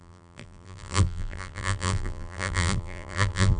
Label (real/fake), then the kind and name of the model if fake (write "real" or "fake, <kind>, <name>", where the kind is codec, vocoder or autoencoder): fake, vocoder, BigVGAN v2